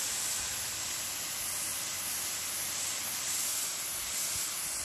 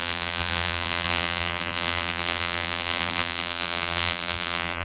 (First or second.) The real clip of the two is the first